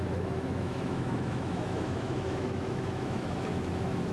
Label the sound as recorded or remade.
remade